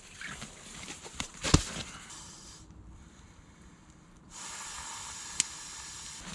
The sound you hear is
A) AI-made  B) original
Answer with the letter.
B